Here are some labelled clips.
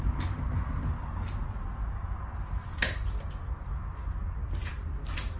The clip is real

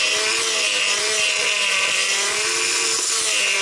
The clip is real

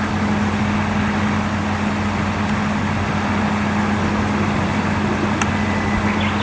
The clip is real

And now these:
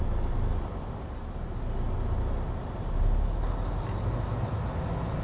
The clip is real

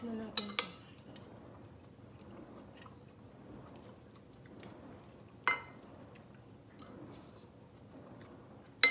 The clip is real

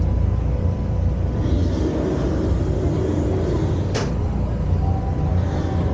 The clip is real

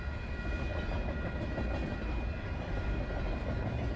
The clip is real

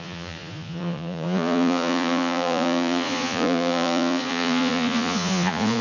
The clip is fake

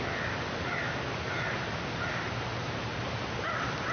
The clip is real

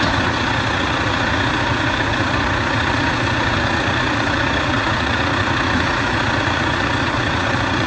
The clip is fake